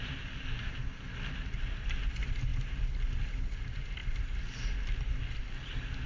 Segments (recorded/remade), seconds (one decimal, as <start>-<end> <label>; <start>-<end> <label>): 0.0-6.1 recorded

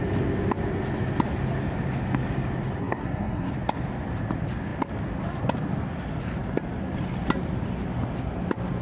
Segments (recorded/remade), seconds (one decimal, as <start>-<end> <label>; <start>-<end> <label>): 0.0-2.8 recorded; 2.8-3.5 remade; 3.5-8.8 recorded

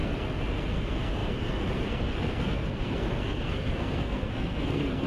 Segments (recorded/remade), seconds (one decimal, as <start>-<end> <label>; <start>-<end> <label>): 0.0-5.1 remade

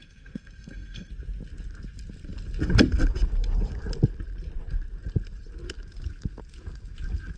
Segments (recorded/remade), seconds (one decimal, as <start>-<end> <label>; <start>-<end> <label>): 0.0-1.1 remade; 1.1-7.4 recorded